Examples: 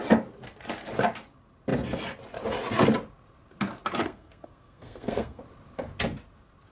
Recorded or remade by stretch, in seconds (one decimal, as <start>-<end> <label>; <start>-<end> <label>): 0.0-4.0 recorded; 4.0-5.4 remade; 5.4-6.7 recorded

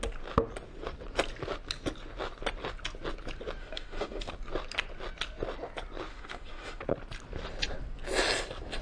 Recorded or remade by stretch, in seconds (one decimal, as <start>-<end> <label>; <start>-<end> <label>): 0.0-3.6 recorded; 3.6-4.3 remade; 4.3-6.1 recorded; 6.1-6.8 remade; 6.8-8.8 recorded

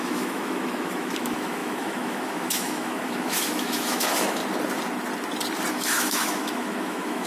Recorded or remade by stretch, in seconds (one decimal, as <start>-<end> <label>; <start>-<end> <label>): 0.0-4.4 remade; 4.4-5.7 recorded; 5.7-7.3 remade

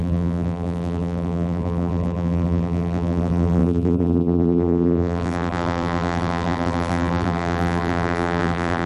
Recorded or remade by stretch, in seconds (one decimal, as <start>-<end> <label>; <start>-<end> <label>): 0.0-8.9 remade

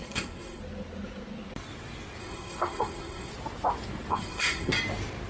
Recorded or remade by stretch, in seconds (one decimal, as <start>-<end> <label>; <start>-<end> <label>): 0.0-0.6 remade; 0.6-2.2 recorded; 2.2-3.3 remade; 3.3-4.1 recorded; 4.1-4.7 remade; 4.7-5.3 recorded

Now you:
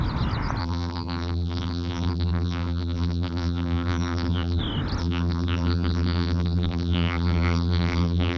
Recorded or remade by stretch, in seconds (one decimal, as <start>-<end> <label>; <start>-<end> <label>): 0.0-0.6 recorded; 0.6-4.6 remade; 4.6-5.0 recorded; 5.0-8.4 remade